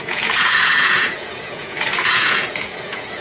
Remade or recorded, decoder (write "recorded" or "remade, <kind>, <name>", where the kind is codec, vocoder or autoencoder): remade, vocoder, Vocos